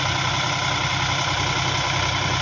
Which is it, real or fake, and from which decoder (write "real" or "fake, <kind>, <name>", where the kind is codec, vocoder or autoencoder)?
real